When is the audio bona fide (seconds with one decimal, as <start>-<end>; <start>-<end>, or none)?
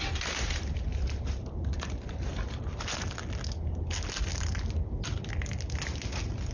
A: 2.3-6.5